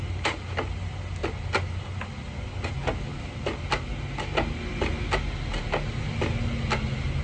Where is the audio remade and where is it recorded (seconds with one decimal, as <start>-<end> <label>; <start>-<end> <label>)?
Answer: 0.0-7.2 recorded